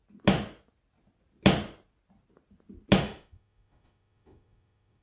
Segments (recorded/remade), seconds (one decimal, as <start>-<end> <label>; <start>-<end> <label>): 0.0-3.0 recorded; 3.0-5.0 remade